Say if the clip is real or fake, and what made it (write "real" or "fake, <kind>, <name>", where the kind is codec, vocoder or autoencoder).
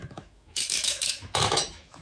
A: fake, autoencoder, DAC-VAE